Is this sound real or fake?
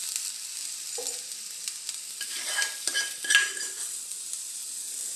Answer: real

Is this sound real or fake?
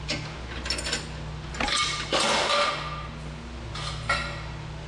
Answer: real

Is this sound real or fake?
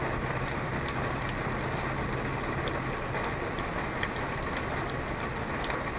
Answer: real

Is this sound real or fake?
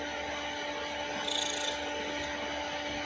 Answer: real